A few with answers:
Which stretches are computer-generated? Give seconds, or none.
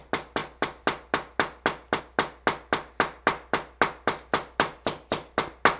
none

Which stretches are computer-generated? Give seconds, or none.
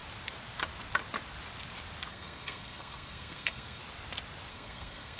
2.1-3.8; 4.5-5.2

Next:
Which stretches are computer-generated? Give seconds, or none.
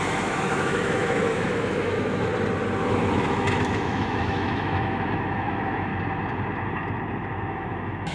0.0-2.3; 2.9-5.9; 7.5-8.1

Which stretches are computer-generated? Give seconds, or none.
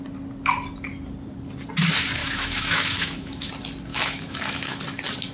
2.2-3.5; 3.9-4.8